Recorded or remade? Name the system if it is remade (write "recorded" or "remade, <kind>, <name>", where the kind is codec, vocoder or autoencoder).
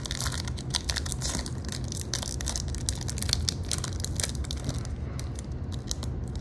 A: recorded